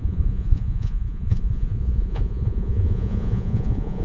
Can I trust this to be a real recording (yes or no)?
no